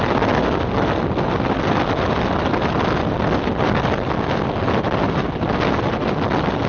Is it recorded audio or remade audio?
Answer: recorded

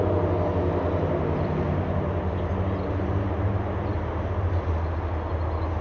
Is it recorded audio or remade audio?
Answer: recorded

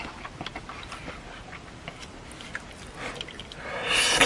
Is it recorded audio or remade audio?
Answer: recorded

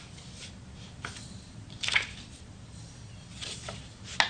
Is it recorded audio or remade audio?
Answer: recorded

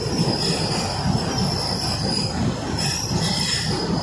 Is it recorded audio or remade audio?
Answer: remade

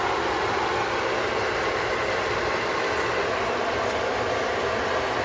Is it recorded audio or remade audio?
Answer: recorded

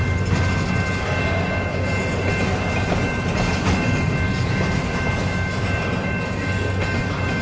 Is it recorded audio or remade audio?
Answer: recorded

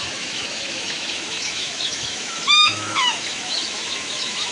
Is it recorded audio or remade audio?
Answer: remade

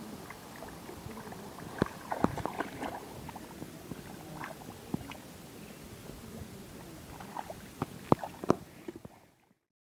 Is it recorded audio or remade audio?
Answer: recorded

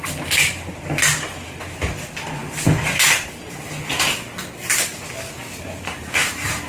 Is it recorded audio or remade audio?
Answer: recorded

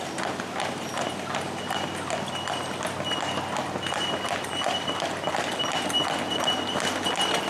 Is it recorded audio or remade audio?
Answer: recorded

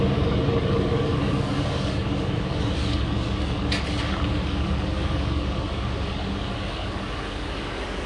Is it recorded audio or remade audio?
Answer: remade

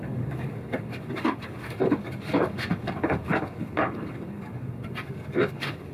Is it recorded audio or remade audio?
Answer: remade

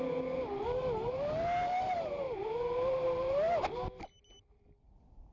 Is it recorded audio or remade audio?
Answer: recorded